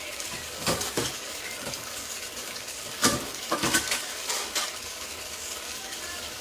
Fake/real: fake